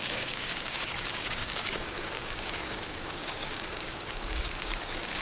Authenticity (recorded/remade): remade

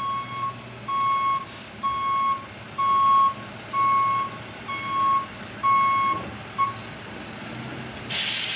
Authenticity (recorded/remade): recorded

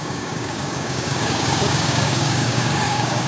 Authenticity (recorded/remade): remade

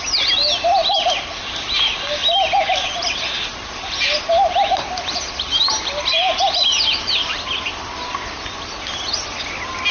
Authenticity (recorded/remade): recorded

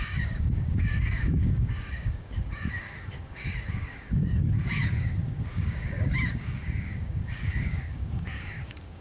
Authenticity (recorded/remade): remade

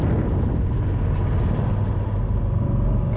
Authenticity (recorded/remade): recorded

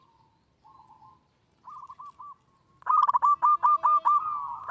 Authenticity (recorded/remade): recorded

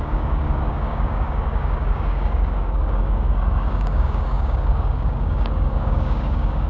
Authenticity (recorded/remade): remade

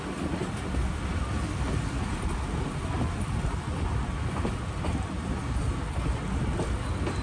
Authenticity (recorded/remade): recorded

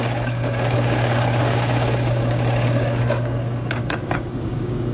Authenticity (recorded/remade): remade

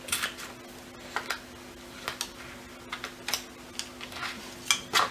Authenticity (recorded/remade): recorded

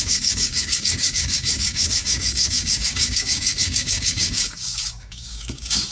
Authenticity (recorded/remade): remade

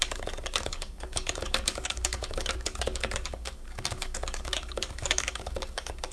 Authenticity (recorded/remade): remade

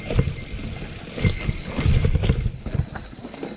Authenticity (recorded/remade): recorded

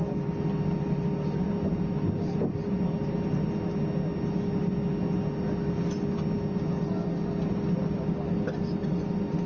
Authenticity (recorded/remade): recorded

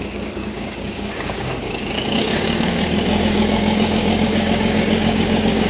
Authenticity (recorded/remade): remade